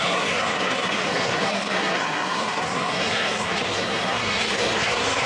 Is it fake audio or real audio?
fake